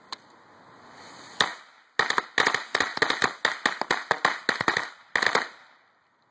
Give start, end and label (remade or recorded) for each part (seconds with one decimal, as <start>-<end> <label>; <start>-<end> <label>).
0.0-6.3 recorded

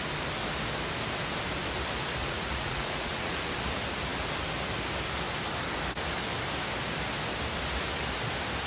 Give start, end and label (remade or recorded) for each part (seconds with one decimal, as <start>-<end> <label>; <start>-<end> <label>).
0.0-2.2 recorded; 2.2-3.5 remade; 3.5-8.7 recorded

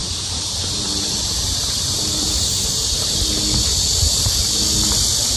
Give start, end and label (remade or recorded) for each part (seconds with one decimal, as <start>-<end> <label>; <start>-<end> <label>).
0.0-3.2 remade; 3.2-5.4 recorded

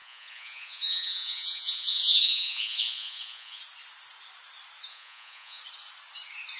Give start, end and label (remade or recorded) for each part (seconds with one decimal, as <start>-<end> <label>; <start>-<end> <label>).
0.0-3.6 remade; 3.6-4.9 recorded; 4.9-5.6 remade; 5.6-6.6 recorded